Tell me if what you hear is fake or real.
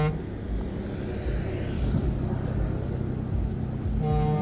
real